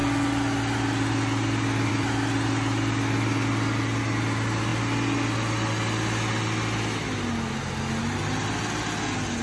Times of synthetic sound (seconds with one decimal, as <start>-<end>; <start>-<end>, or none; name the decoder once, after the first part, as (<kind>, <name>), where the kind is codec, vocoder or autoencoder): none